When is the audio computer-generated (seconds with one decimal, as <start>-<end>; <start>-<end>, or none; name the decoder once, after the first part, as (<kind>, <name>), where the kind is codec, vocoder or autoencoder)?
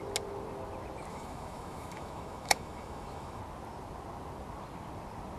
1.1-3.4 (autoencoder, DAC-VAE)